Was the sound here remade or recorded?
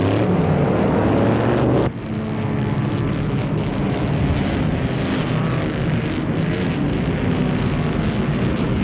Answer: recorded